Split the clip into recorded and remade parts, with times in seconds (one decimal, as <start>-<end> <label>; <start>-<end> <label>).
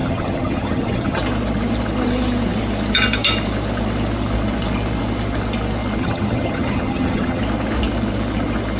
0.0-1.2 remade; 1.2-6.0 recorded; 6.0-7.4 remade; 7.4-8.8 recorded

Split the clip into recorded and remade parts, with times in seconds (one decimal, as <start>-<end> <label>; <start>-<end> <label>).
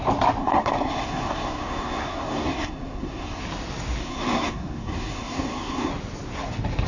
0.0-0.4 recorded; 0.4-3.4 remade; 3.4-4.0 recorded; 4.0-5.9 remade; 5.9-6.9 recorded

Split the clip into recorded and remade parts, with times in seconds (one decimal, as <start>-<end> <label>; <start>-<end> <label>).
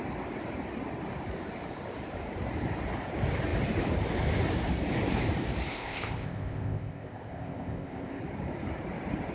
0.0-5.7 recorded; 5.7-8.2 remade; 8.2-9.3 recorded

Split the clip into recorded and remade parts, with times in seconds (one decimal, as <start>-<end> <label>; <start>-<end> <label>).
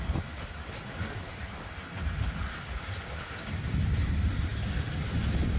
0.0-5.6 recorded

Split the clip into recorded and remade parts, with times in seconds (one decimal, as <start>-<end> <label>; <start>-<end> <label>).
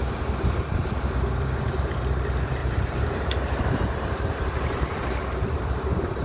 0.0-6.2 remade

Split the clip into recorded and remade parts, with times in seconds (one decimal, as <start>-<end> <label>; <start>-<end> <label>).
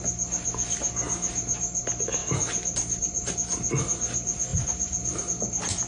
0.0-2.2 recorded; 2.2-3.3 remade; 3.3-4.5 recorded; 4.5-5.2 remade; 5.2-5.9 recorded